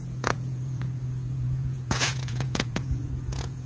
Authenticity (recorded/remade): remade